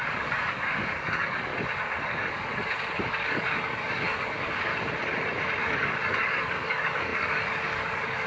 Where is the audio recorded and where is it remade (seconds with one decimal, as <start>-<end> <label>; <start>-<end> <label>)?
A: 0.0-1.5 remade; 1.5-2.1 recorded; 2.1-2.5 remade; 2.5-3.1 recorded; 3.1-4.7 remade; 4.7-5.6 recorded; 5.6-8.3 remade